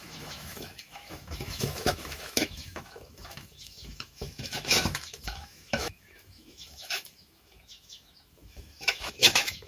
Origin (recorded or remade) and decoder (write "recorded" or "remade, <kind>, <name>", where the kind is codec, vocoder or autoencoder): remade, autoencoder, DAC-VAE